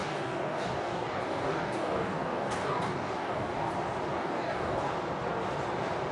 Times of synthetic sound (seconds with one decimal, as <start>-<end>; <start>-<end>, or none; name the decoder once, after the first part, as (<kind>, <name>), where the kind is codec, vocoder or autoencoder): 0.0-3.7 (codec, DAC); 4.2-4.9